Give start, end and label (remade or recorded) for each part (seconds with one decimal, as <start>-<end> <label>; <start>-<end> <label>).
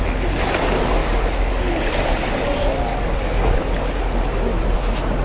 0.0-5.2 recorded